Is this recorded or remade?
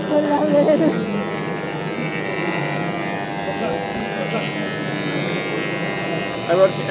recorded